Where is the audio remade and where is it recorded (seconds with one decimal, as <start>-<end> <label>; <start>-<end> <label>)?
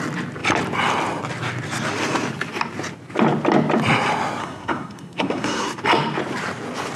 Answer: 0.0-4.4 recorded; 4.4-5.8 remade; 5.8-7.0 recorded